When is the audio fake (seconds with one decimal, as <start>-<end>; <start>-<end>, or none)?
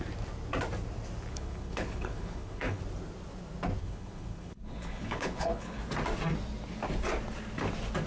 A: 1.3-2.8; 3.8-5.8